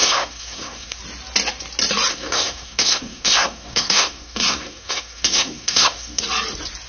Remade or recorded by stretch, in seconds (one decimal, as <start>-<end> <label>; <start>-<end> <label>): 0.0-1.0 remade; 1.0-2.1 recorded; 2.1-6.2 remade; 6.2-6.9 recorded